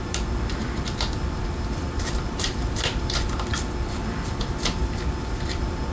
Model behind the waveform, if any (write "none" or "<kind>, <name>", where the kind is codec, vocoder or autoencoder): vocoder, BigVGAN v2